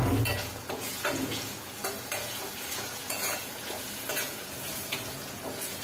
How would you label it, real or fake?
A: fake